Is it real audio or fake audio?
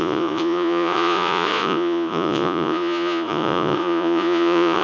fake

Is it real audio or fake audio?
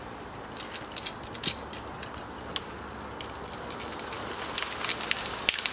real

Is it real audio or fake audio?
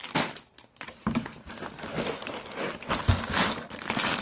real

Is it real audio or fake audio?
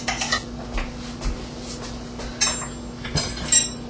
real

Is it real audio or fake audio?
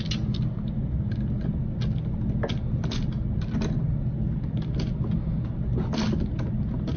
real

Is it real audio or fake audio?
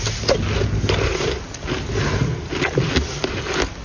real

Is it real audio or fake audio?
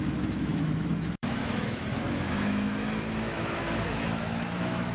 fake